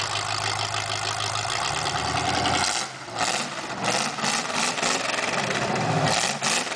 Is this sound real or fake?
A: real